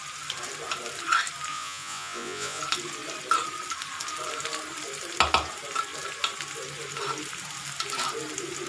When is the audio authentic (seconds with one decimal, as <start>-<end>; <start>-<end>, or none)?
0.0-1.5; 2.6-8.7